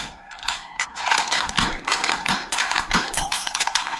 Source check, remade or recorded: remade